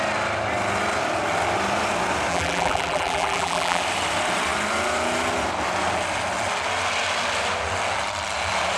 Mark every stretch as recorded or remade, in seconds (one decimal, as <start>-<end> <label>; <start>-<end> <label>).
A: 0.0-2.3 recorded; 2.3-3.8 remade; 3.8-8.8 recorded